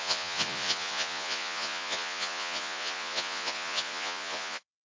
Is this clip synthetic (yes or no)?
yes